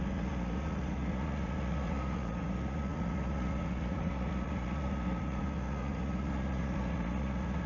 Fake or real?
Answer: fake